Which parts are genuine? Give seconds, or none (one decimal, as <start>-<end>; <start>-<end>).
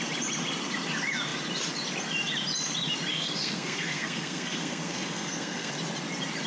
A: 0.0-3.1; 5.7-6.5